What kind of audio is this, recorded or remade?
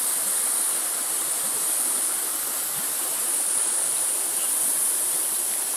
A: recorded